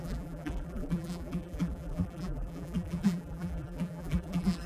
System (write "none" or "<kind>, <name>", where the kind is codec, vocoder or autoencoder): vocoder, BigVGAN v2